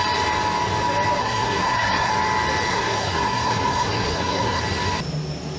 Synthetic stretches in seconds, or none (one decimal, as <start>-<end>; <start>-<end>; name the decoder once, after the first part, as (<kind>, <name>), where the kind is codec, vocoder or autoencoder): 1.2-2.1 (codec, SNAC); 2.7-4.6